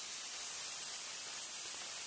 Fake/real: real